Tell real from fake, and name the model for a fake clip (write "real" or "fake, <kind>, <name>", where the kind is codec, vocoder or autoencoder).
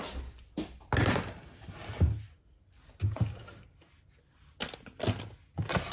real